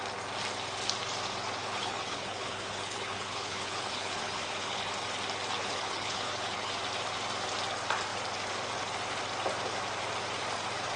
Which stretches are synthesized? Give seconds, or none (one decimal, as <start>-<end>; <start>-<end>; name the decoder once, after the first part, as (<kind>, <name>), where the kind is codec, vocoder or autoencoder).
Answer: 1.6-4.8 (codec, HILCodec); 5.6-6.7